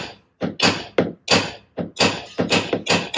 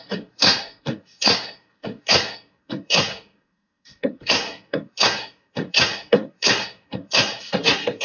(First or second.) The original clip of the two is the first